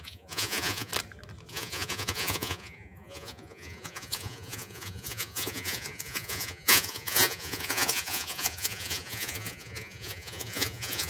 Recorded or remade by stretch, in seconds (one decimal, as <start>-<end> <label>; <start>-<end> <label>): 0.0-0.9 remade; 0.9-1.5 recorded; 1.5-11.1 remade